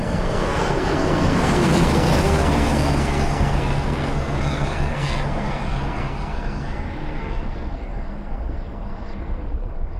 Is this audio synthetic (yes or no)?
yes